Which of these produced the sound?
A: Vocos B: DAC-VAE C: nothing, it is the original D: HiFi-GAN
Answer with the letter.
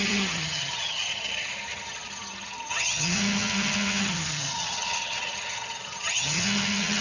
D